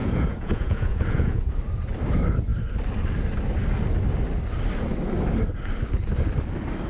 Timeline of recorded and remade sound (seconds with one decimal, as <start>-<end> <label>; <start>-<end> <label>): 0.0-1.5 remade; 1.5-6.9 recorded